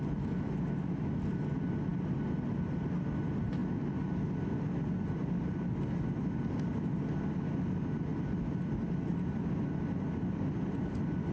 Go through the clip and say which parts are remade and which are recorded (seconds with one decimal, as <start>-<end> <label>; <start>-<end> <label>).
0.0-11.3 recorded